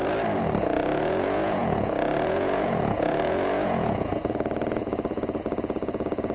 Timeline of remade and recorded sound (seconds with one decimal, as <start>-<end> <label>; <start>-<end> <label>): 0.0-0.6 recorded; 0.6-6.3 remade